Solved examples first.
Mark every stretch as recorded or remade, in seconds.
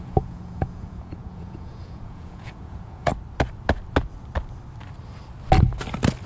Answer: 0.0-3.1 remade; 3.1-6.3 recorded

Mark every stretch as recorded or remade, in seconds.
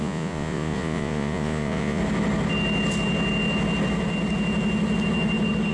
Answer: 0.0-2.0 remade; 2.0-5.7 recorded